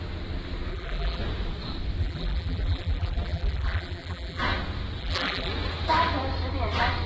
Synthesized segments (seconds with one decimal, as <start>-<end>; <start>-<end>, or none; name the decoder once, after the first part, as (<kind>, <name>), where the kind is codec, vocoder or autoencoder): 0.7-1.2 (vocoder, BigVGAN v2); 2.0-4.4; 5.0-5.5